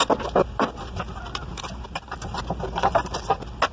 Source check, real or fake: real